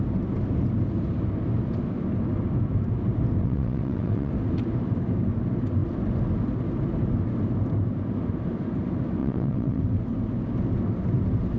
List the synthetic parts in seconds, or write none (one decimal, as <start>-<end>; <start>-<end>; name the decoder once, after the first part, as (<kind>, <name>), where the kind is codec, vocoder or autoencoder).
3.4-4.3 (vocoder, WaveNeXt); 9.2-9.8